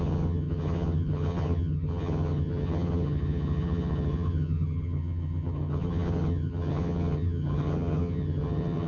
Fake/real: fake